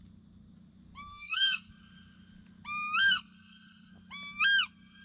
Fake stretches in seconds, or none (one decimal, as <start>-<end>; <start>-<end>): 1.1-1.7; 3.0-3.9